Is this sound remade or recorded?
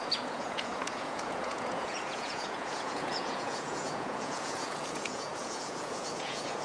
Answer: remade